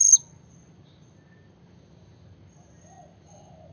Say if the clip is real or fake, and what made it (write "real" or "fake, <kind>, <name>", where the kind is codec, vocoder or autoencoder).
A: real